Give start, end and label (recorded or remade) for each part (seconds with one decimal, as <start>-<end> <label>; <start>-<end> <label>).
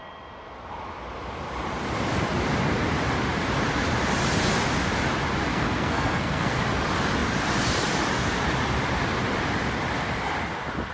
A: 0.0-5.5 recorded; 5.5-6.6 remade; 6.6-10.9 recorded